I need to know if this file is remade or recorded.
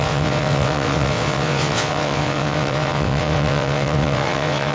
remade